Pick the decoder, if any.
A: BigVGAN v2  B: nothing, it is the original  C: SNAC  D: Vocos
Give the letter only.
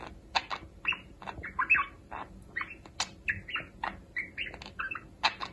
B